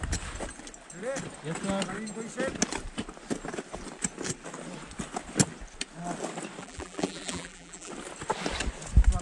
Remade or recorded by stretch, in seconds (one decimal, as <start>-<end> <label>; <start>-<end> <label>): 0.0-6.6 recorded; 6.6-7.9 remade; 7.9-9.2 recorded